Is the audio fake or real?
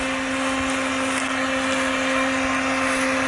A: real